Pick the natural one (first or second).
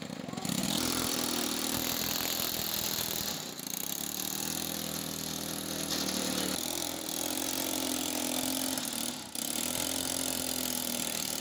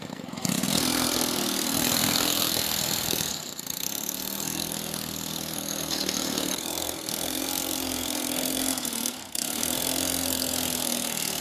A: first